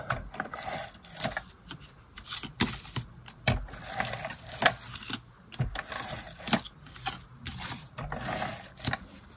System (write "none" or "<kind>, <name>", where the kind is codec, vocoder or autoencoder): none